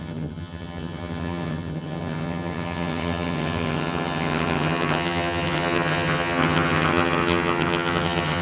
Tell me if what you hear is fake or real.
fake